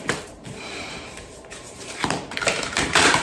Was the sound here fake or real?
fake